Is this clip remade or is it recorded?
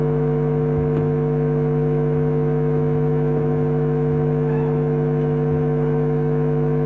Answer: remade